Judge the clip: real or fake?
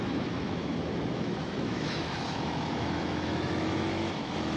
fake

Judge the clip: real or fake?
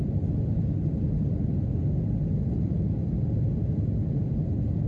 real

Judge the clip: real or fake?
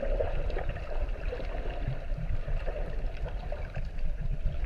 fake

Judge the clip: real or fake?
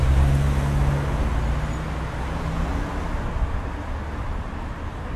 real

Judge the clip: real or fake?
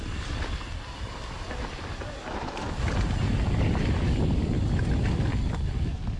real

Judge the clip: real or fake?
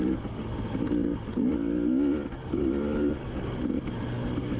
real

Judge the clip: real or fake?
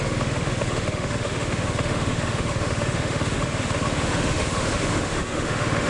fake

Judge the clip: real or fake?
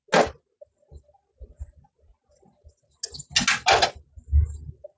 real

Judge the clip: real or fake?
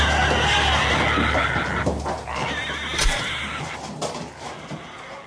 real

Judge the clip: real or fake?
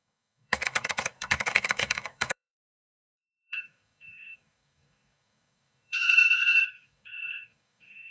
fake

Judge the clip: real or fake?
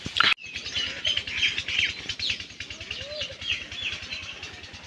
real